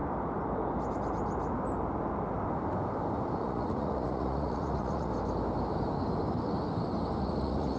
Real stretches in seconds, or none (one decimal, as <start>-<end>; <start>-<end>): 0.0-3.4; 5.1-7.2